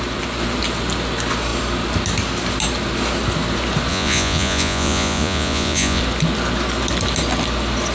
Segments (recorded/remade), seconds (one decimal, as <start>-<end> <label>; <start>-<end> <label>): 0.0-3.9 recorded; 3.9-6.0 remade; 6.0-7.9 recorded